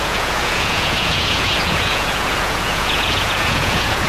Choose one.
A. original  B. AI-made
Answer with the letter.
B